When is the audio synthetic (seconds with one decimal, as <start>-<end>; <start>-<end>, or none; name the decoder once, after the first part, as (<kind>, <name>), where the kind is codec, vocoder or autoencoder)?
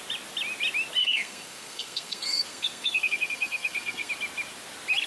1.0-4.1 (codec, SNAC)